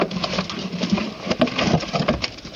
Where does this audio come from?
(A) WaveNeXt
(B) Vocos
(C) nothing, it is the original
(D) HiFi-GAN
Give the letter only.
C